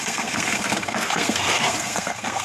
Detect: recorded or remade remade